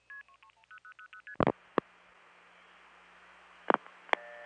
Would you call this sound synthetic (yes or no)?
no